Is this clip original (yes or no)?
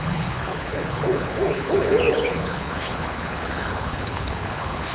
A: no